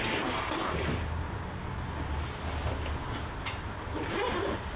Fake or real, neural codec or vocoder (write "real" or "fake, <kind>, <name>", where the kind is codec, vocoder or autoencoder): real